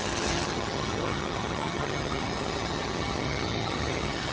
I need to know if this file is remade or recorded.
remade